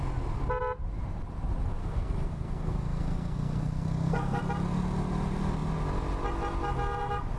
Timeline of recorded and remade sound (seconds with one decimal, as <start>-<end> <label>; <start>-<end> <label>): 0.0-1.8 recorded; 1.8-4.4 remade; 4.4-7.4 recorded